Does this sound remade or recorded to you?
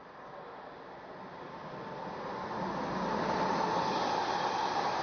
recorded